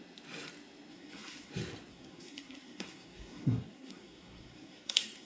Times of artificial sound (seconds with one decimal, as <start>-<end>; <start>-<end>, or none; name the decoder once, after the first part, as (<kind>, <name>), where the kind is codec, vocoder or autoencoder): 0.9-1.5 (codec, SNAC); 1.9-5.3